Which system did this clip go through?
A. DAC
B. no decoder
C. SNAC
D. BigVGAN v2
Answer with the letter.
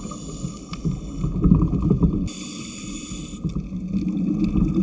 B